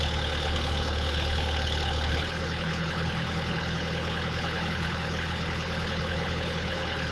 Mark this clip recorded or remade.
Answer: remade